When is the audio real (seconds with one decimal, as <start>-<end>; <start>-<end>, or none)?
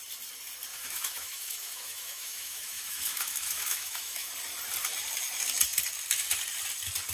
0.0-0.7; 4.3-7.1